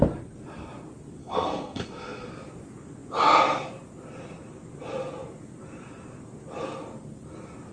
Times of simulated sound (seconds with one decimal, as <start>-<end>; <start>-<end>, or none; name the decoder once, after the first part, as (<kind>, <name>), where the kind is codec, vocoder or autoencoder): 1.2-2.3 (codec, SNAC)